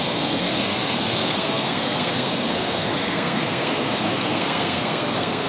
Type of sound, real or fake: fake